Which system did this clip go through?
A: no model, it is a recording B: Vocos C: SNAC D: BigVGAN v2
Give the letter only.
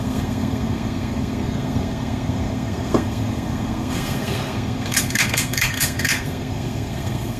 C